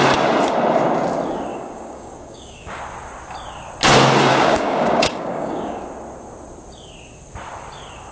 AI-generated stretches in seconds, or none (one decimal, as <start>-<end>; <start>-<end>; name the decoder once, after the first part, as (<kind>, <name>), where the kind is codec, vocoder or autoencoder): 1.5-2.8 (codec, DAC); 4.3-5.8